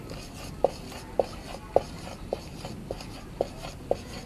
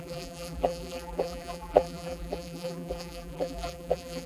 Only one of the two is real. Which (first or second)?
first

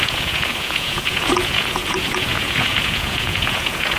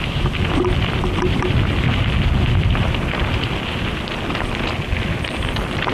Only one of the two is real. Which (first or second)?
second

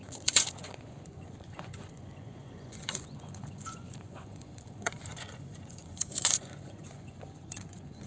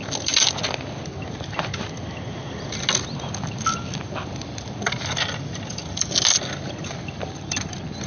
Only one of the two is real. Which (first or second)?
second